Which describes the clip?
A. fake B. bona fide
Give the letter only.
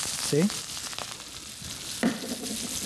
B